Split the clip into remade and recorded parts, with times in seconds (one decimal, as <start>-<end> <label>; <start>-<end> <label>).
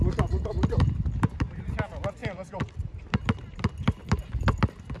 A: 0.0-5.0 recorded